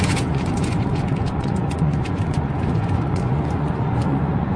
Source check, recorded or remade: remade